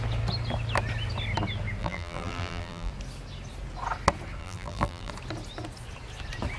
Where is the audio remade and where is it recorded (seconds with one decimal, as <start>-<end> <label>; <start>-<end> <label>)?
0.0-1.8 recorded; 1.8-2.9 remade; 2.9-4.4 recorded; 4.4-5.1 remade; 5.1-6.6 recorded